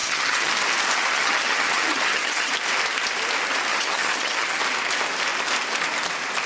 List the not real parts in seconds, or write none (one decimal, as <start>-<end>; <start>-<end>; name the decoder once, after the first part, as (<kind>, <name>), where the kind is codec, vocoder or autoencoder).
0.0-0.5 (vocoder, HiFi-GAN); 1.0-2.5; 3.7-4.6